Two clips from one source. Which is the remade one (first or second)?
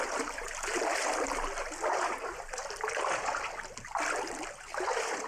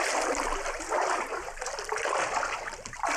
second